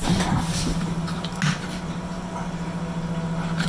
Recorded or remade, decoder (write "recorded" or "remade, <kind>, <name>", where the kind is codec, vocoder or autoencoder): recorded